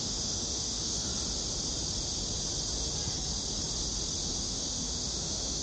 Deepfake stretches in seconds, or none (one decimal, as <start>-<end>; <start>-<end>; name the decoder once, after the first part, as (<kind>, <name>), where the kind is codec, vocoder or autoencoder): 0.0-1.1 (autoencoder, DAC-VAE); 4.4-5.6